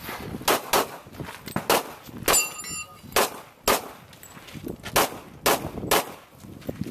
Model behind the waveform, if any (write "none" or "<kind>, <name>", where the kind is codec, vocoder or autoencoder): none